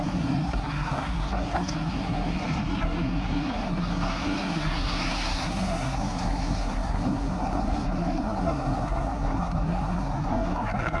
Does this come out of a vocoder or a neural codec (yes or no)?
yes